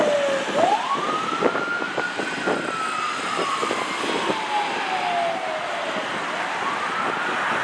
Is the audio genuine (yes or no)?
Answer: yes